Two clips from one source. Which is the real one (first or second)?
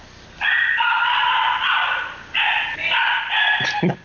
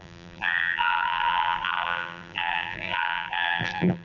first